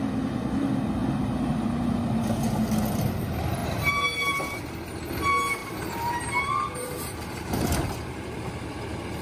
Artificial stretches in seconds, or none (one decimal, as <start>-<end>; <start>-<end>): 3.6-4.6; 5.6-8.5